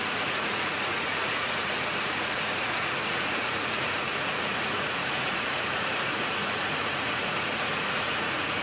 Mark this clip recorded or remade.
remade